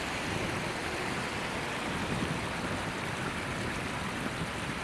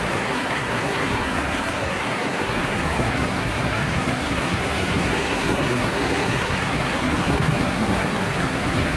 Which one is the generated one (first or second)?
second